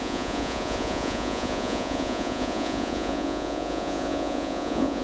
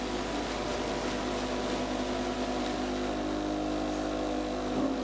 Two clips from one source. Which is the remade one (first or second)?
first